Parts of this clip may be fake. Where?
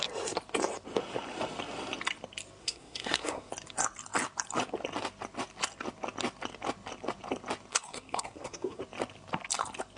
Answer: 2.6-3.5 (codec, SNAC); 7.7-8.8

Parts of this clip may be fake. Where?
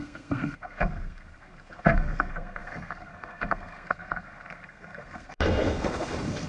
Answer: 0.0-6.5 (codec, SNAC)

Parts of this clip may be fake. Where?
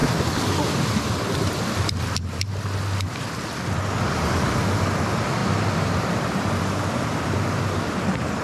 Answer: 5.4-6.6 (vocoder, BigVGAN v2)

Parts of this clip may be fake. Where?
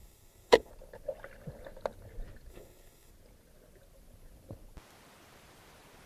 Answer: 0.0-0.7 (codec, SNAC); 2.5-3.1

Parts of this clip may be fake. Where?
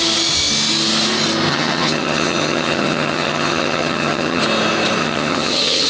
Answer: 1.5-4.4 (vocoder, HiFi-GAN); 5.0-5.9